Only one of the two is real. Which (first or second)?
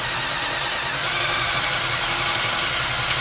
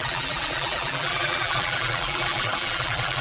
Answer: first